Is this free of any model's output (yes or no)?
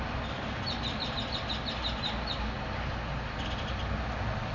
yes